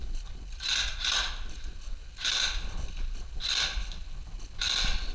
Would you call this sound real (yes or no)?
yes